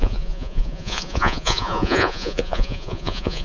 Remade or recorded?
remade